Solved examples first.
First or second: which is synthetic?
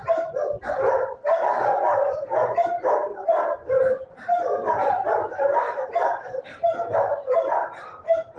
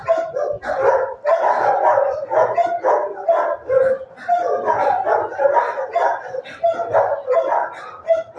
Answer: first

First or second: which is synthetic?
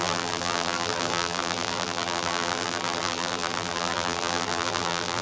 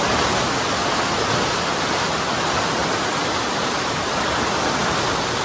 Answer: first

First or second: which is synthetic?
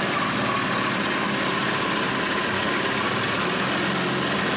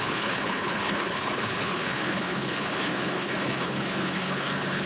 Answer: second